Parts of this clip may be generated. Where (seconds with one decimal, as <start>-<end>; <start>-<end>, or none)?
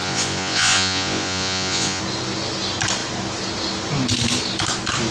0.0-2.0